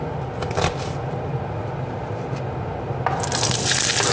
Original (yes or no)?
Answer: yes